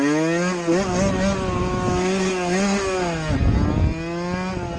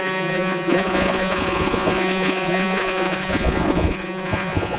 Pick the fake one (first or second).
second